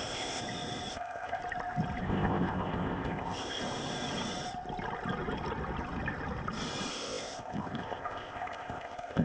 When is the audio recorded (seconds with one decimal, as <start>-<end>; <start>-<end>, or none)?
0.4-0.9; 1.4-2.0; 3.6-6.9